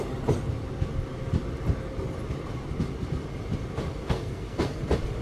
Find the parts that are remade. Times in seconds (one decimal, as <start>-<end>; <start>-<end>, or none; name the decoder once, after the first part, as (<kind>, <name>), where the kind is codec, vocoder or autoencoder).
4.0-4.8 (codec, SNAC)